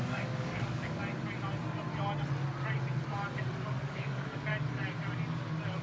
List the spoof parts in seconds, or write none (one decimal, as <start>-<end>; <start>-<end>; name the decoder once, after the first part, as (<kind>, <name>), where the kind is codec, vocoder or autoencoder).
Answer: 0.0-1.0 (codec, DAC); 3.8-4.5